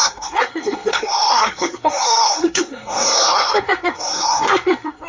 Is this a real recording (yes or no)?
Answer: no